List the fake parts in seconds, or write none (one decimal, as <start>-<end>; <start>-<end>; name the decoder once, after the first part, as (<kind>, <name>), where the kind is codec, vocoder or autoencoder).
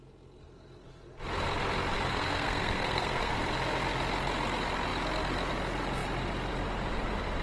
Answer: 2.1-3.3 (codec, SNAC)